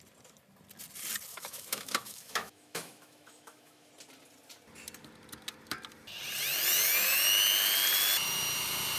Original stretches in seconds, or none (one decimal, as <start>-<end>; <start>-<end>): 0.0-1.3; 3.9-9.0